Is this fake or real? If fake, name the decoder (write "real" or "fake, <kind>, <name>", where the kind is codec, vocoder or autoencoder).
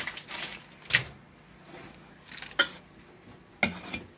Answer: real